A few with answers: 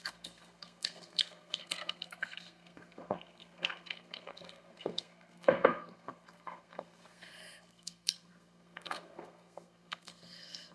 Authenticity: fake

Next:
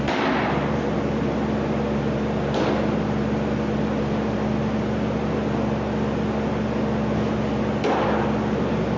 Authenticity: real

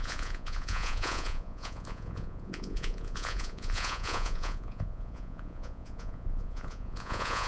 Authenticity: fake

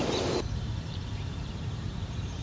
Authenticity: fake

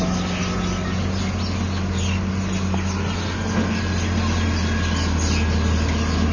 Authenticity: real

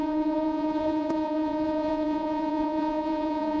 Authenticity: fake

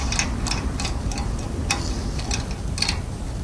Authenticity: fake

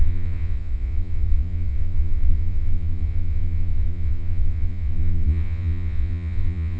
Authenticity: fake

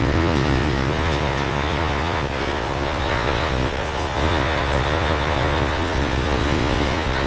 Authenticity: fake